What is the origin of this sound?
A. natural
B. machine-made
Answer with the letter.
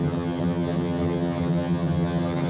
B